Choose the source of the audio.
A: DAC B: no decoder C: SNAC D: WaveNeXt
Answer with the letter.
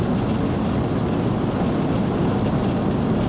B